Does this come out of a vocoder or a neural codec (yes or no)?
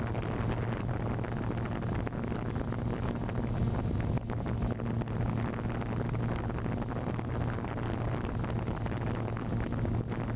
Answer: no